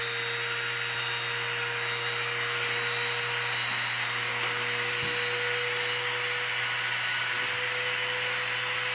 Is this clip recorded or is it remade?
recorded